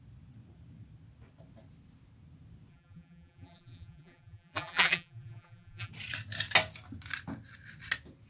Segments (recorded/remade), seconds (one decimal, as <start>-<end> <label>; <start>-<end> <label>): 0.0-2.7 recorded; 2.7-5.9 remade; 5.9-8.3 recorded

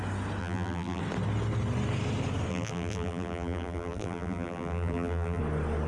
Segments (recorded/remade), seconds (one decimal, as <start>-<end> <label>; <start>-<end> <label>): 0.0-0.4 recorded; 0.4-1.0 remade; 1.0-2.5 recorded; 2.5-5.4 remade; 5.4-5.9 recorded

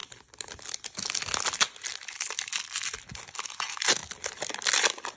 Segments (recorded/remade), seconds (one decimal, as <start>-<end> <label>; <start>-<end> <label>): 0.0-5.2 recorded

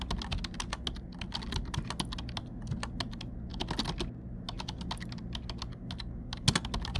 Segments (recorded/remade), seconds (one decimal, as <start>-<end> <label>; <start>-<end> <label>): 0.0-7.0 recorded

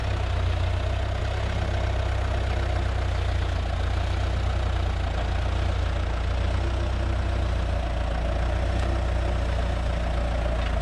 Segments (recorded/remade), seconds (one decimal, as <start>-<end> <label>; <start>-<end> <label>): 0.0-10.8 recorded

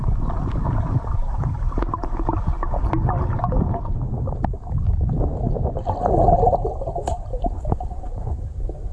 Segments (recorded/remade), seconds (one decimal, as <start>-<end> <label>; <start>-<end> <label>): 0.0-2.5 remade; 2.5-6.5 recorded; 6.5-7.3 remade; 7.3-8.9 recorded

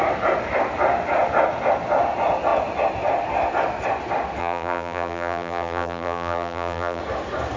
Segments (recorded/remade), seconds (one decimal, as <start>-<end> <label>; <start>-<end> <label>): 0.0-4.4 recorded; 4.4-7.0 remade; 7.0-7.6 recorded